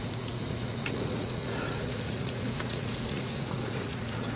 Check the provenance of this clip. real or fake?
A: fake